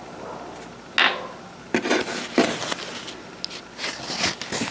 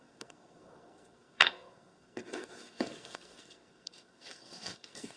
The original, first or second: first